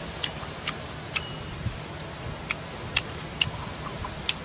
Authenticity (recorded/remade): recorded